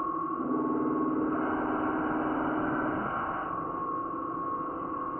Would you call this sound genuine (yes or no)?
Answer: yes